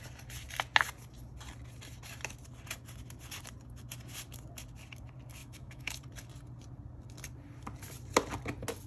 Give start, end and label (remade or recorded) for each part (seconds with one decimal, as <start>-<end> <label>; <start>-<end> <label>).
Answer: 0.0-5.4 recorded; 5.4-6.0 remade; 6.0-8.9 recorded